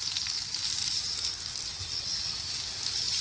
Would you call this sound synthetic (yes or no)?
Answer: no